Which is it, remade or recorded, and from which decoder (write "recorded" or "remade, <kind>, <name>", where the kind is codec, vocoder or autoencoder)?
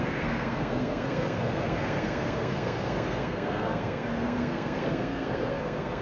remade, codec, SNAC